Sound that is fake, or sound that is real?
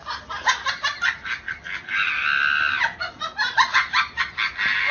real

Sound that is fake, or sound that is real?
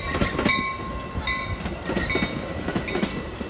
real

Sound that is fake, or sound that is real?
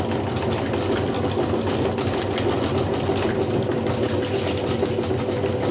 real